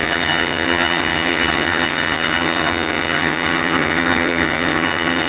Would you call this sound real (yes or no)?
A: no